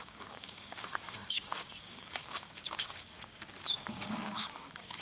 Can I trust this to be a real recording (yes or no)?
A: no